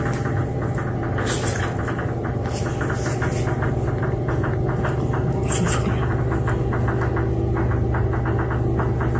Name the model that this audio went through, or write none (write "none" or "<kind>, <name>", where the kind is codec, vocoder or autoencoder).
none